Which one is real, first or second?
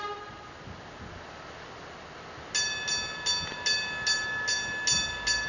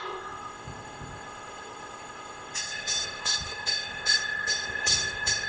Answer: first